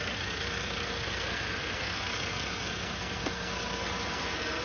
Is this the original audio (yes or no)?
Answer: no